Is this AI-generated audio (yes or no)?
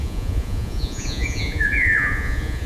yes